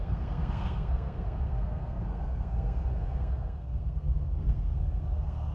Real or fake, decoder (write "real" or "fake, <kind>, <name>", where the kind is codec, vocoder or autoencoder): fake, codec, SNAC